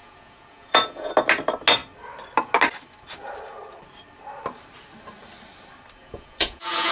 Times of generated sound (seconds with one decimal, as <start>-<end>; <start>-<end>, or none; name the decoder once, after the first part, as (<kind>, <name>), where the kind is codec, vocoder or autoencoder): 0.0-1.1 (vocoder, Vocos); 6.0-6.9